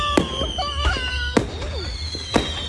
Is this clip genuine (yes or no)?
yes